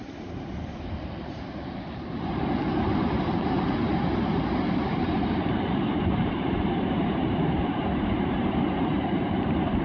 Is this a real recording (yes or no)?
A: no